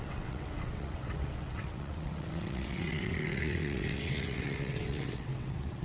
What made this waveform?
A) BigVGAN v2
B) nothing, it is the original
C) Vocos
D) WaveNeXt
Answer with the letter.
D